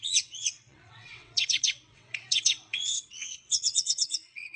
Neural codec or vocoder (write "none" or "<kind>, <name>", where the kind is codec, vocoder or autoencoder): vocoder, WaveNeXt